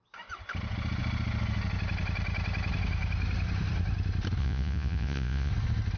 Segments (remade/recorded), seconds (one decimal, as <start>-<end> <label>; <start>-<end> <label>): 0.0-4.4 recorded; 4.4-5.5 remade; 5.5-6.0 recorded